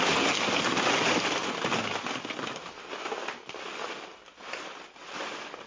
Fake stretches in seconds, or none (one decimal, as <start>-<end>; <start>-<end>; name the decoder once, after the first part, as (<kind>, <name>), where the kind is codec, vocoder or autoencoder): 4.4-4.9 (vocoder, BigVGAN v2)